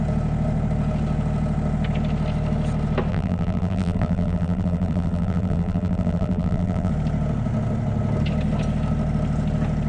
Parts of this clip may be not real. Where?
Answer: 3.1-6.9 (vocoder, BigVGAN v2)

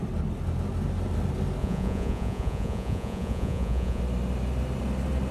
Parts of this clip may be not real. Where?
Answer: 1.6-4.0 (vocoder, Vocos)

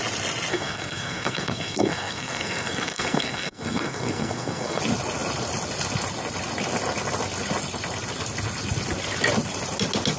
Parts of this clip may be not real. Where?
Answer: 0.5-4.8 (codec, SNAC)

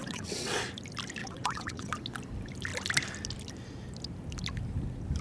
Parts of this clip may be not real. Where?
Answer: 0.0-0.6 (vocoder, WaveNeXt); 1.2-1.9

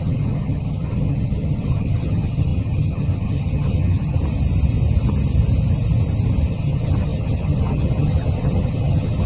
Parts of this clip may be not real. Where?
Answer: 0.0-4.2 (vocoder, HiFi-GAN); 6.5-9.3